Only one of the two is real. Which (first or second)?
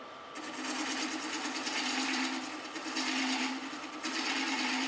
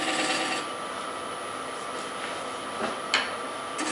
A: second